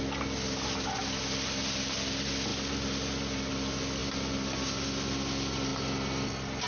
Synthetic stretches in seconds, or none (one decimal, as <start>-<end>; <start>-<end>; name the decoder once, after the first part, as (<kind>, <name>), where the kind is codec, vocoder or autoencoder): none